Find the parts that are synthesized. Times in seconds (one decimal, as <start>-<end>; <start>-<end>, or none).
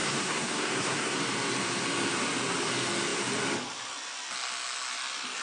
0.0-1.2